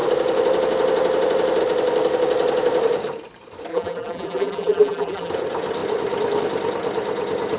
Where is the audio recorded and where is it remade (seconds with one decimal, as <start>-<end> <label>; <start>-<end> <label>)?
0.0-3.7 recorded; 3.7-5.3 remade; 5.3-7.6 recorded